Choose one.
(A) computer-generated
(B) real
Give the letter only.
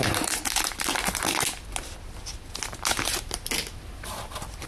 B